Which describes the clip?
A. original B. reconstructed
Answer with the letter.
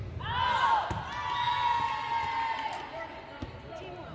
A